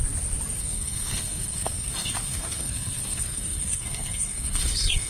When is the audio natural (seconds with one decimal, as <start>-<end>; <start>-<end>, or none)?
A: 0.0-0.6